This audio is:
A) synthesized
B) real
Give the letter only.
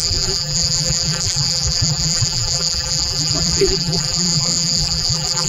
A